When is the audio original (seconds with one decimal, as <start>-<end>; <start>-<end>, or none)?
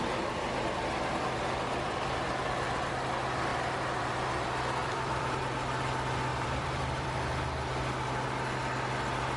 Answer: 0.0-4.8; 5.4-6.3; 7.1-9.4